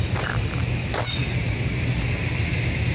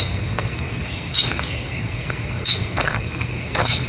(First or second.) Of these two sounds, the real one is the first